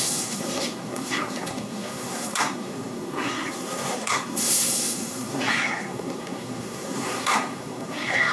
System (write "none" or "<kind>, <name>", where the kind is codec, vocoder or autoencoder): codec, SNAC